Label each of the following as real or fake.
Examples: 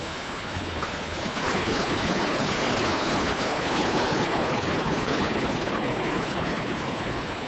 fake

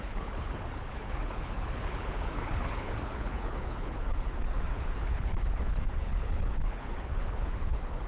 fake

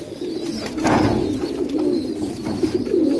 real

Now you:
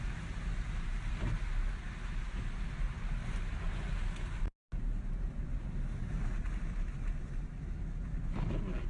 real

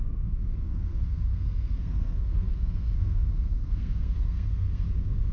fake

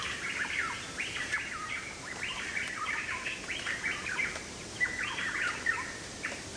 fake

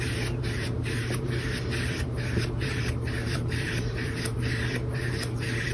fake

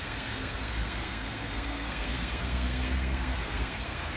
fake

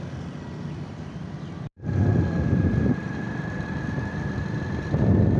real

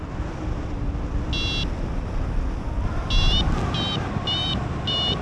real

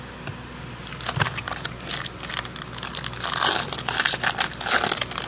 real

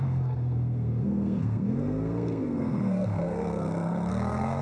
fake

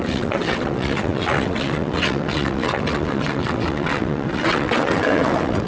fake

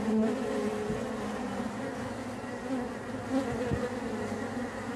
real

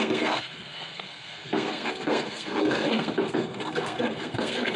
fake